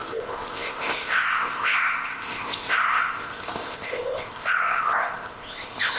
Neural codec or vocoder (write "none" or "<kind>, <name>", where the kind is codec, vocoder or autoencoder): codec, ZipCodec